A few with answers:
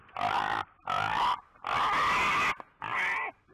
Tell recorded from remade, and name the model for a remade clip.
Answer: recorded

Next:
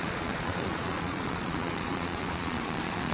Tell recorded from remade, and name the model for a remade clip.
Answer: remade, vocoder, Vocos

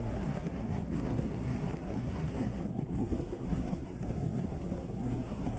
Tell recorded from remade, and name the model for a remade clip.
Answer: remade, codec, SNAC